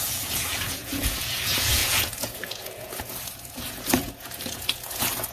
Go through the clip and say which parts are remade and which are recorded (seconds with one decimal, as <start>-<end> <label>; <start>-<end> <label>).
0.0-5.3 remade